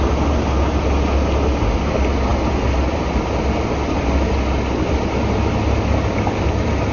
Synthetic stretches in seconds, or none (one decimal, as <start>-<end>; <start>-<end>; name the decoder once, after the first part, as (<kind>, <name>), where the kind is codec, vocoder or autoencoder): none